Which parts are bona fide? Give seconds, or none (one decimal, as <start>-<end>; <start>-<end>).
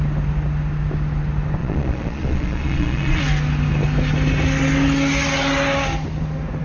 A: 0.0-1.6; 3.2-6.6